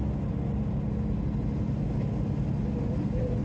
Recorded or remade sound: recorded